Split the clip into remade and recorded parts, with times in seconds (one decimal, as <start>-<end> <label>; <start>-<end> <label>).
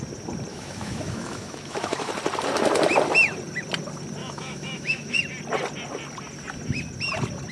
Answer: 0.0-0.5 recorded; 0.5-2.1 remade; 2.1-4.2 recorded; 4.2-5.2 remade; 5.2-7.5 recorded